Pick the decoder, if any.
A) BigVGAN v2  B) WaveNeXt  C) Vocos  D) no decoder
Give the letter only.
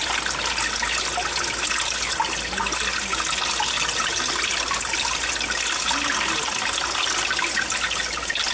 D